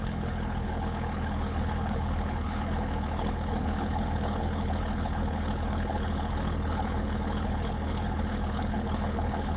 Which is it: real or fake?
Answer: fake